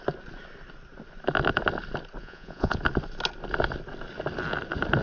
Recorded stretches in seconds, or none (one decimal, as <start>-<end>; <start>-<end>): 0.0-2.2; 2.8-5.0